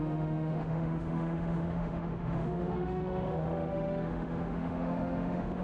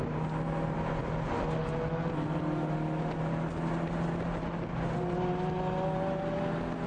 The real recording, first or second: second